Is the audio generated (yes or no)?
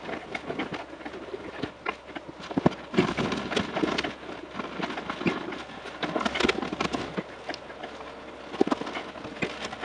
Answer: no